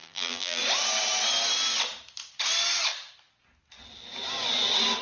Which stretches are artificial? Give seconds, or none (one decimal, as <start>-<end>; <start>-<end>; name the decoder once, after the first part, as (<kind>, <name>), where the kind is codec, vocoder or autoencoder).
0.0-0.6 (vocoder, BigVGAN v2)